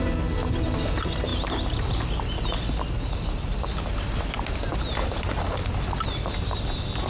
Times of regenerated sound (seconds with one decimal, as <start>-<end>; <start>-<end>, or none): none